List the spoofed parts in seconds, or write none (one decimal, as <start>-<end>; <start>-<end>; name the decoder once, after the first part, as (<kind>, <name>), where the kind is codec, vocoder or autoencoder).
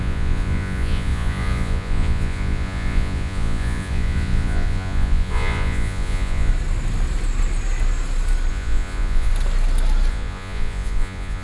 0.0-6.5 (vocoder, Vocos); 8.5-9.3; 10.1-11.4